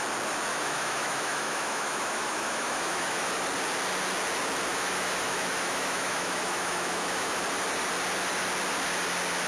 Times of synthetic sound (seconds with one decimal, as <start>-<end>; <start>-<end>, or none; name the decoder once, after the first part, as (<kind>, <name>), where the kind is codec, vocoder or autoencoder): 0.5-3.3 (autoencoder, DAC-VAE); 4.7-7.4